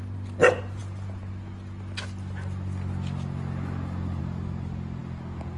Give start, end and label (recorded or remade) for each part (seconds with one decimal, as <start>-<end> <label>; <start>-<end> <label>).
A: 0.0-5.6 recorded